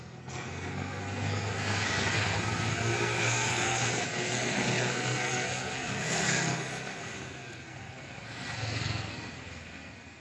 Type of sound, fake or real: fake